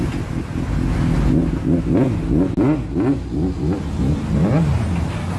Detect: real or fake real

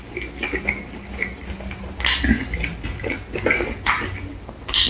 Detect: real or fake real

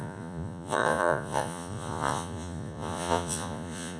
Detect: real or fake fake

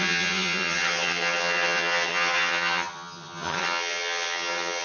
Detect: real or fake fake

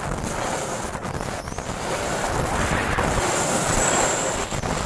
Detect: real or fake real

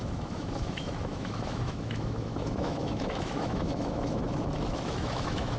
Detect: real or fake fake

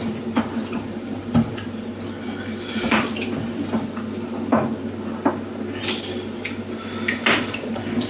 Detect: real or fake real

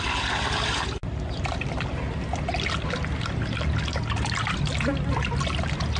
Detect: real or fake real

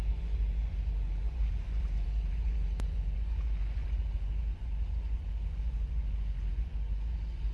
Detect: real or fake fake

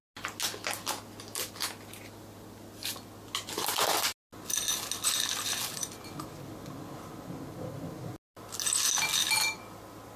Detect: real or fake real